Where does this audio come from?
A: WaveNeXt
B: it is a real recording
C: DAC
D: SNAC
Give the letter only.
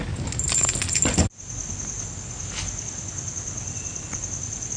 B